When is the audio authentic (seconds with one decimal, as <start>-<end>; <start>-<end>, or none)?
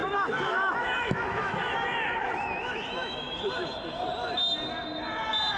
3.4-5.6